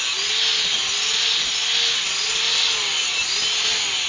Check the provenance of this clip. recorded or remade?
recorded